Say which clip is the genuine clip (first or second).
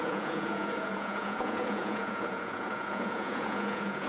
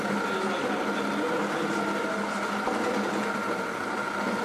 second